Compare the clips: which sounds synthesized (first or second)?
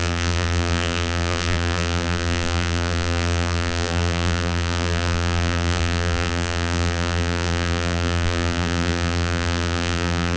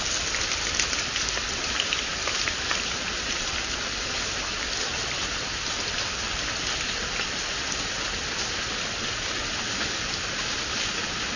first